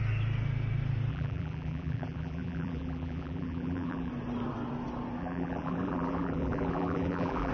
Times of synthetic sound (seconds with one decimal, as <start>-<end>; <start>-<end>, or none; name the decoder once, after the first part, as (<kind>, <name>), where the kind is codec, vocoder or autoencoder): 1.1-4.1 (vocoder, BigVGAN v2); 5.2-7.5